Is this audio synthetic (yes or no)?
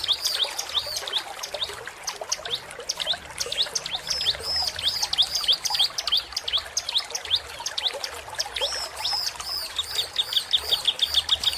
no